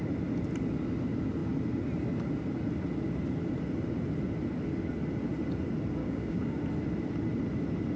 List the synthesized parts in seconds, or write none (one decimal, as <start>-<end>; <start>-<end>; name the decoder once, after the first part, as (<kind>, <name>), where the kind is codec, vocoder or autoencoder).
6.0-6.6 (codec, DAC)